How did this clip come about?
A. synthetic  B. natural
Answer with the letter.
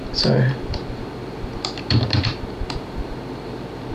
A